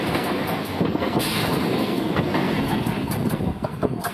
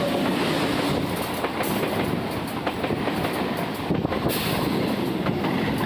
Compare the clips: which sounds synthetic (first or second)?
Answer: first